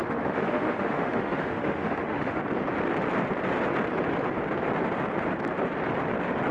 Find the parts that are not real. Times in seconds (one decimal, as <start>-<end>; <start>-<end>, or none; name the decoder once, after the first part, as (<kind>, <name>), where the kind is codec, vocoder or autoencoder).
0.0-2.4 (autoencoder, DAC-VAE)